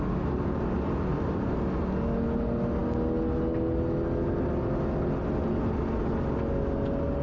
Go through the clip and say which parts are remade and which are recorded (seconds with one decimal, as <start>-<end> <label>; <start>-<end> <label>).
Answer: 0.0-1.1 recorded; 1.1-1.6 remade; 1.6-7.2 recorded